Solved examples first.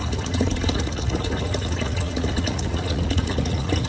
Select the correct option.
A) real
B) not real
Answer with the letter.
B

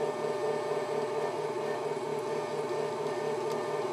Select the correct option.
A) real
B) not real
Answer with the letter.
A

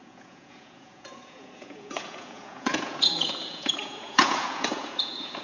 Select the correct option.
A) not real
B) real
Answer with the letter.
A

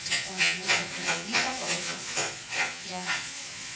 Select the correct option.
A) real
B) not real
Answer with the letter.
B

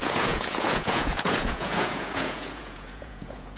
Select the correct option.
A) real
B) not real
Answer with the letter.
B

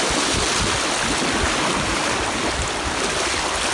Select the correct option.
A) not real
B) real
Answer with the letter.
B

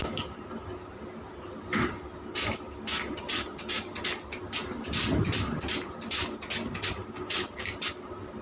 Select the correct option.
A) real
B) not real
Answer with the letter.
A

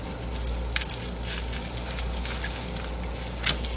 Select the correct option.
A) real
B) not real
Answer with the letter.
A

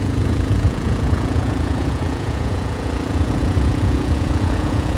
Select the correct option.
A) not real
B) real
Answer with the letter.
A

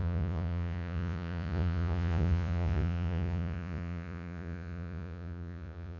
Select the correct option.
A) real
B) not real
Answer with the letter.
B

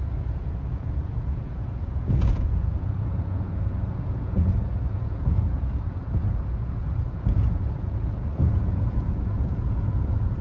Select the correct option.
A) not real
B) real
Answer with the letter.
A